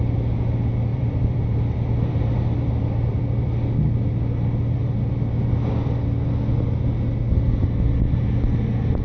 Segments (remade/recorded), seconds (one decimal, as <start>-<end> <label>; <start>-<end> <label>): 0.0-0.9 recorded; 0.9-3.2 remade; 3.2-9.0 recorded